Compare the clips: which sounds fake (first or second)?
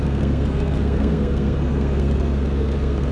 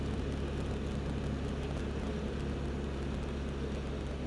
first